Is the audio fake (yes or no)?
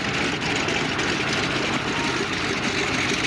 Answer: no